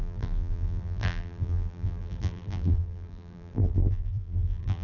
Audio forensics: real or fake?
fake